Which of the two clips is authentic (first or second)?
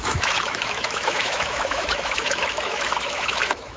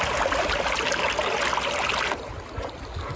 second